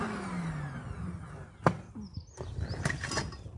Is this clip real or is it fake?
real